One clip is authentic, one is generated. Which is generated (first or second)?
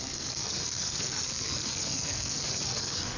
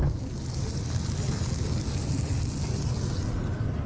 first